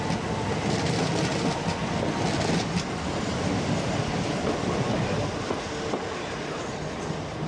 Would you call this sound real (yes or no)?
yes